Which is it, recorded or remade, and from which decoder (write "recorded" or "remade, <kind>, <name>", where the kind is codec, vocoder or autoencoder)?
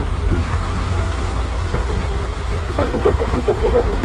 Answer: remade, codec, SNAC